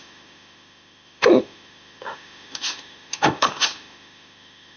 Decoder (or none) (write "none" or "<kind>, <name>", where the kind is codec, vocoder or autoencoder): autoencoder, DAC-VAE